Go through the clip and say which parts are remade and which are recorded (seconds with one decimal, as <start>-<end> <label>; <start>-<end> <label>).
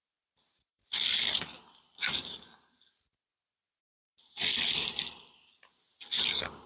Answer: 0.0-0.7 recorded; 0.7-1.9 remade; 1.9-3.8 recorded; 3.8-5.5 remade; 5.5-6.7 recorded